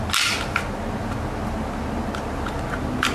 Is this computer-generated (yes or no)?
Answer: no